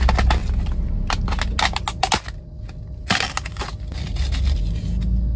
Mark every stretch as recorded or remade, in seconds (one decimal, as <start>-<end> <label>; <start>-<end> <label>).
0.0-5.4 recorded